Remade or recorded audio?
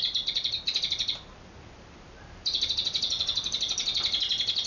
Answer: recorded